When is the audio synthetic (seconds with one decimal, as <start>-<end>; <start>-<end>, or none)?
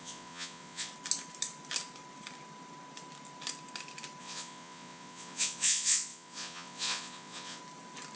0.0-0.9; 4.2-7.6